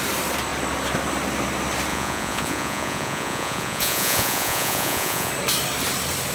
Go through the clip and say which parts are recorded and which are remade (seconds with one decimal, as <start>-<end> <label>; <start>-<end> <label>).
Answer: 0.0-1.9 recorded; 1.9-5.3 remade; 5.3-6.3 recorded